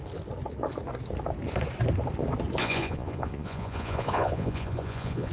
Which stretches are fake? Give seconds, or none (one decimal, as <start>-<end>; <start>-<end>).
2.6-5.3

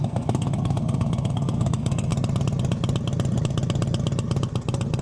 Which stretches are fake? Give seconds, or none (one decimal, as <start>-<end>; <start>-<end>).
0.0-2.1

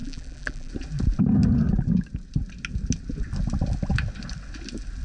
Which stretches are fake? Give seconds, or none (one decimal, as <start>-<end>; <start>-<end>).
0.0-0.7

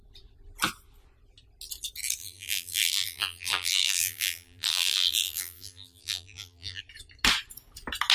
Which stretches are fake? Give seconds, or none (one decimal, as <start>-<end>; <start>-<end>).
2.2-6.8

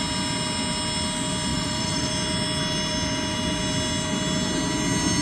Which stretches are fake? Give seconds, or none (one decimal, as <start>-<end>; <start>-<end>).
1.5-2.1

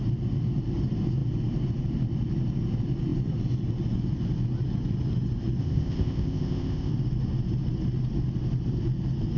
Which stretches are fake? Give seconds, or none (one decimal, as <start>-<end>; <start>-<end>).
5.6-6.9

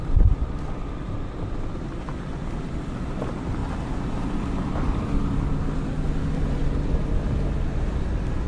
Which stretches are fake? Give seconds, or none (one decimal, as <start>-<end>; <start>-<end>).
none

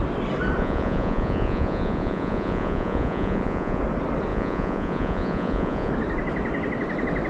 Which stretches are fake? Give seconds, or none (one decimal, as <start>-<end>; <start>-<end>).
0.6-3.8; 4.3-5.9